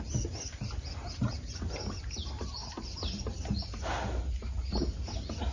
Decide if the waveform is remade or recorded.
recorded